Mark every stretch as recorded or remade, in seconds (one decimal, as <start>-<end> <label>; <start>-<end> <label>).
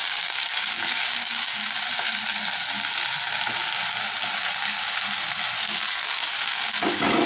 0.0-1.6 remade; 1.6-5.6 recorded; 5.6-7.3 remade